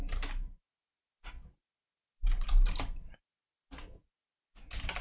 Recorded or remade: recorded